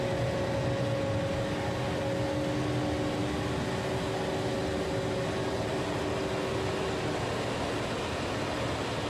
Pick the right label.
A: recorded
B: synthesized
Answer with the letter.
A